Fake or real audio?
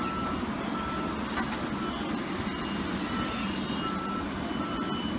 real